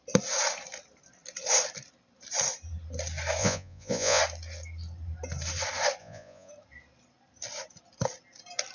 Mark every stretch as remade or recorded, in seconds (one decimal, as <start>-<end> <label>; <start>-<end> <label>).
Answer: 0.0-3.4 recorded; 3.4-4.2 remade; 4.2-6.0 recorded; 6.0-6.5 remade; 6.5-8.7 recorded